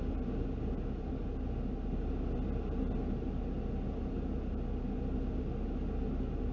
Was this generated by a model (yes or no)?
no